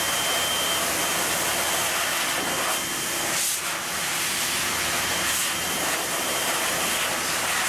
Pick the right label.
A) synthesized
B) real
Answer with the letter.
A